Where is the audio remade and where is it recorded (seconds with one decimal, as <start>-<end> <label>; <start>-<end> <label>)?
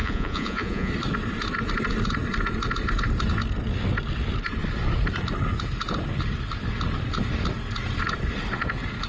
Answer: 0.0-0.9 remade; 0.9-9.1 recorded